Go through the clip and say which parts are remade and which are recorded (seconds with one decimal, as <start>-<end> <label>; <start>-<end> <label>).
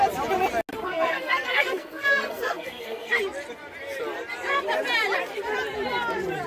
0.0-0.7 recorded; 0.7-3.2 remade; 3.2-6.5 recorded